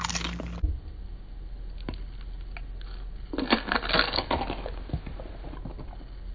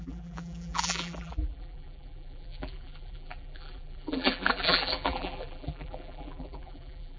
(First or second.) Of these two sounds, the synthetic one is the second